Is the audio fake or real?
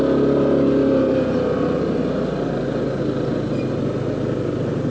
real